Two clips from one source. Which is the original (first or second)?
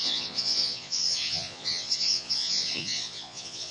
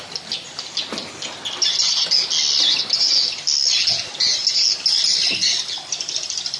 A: second